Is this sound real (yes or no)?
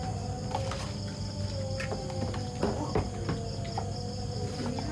yes